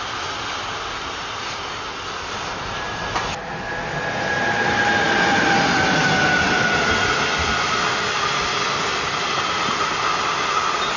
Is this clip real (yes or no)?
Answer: yes